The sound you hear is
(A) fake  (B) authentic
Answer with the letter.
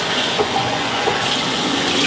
A